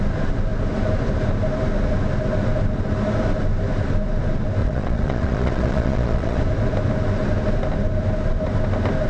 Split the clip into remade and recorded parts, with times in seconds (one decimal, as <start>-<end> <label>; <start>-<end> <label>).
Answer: 0.0-4.6 recorded; 4.6-6.4 remade; 6.4-9.1 recorded